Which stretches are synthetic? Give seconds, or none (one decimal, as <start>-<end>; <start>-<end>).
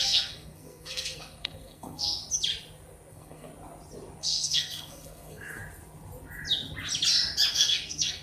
0.0-2.2; 3.1-3.5; 4.2-5.6; 7.5-8.2